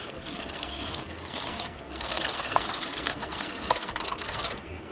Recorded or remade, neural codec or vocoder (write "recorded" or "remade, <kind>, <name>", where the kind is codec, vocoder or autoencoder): remade, codec, SNAC